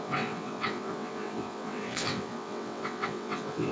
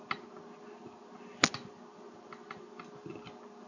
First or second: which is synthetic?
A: first